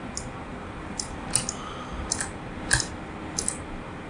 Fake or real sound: real